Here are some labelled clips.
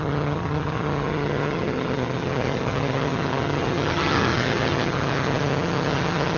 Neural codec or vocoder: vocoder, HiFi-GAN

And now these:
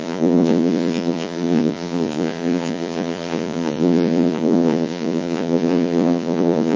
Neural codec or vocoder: vocoder, Vocos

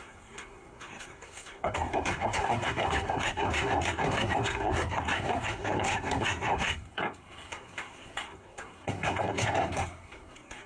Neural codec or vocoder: codec, SNAC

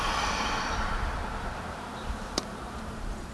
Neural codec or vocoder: vocoder, BigVGAN v2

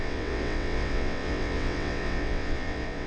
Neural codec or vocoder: vocoder, WaveNeXt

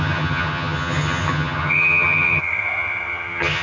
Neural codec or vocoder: vocoder, HiFi-GAN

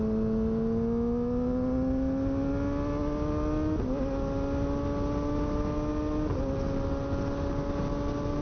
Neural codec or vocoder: none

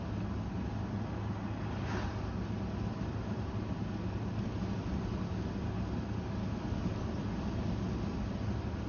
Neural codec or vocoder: none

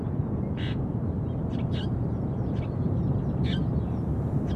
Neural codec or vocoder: vocoder, BigVGAN v2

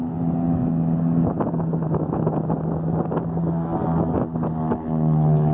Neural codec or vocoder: none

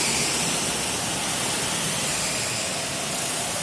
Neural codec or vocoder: none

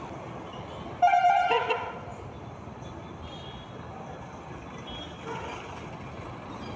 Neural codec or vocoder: none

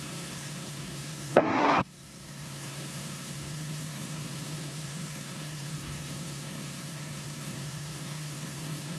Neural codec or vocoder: codec, SNAC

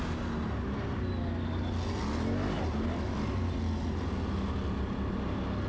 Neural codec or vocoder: none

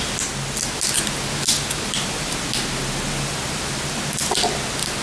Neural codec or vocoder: none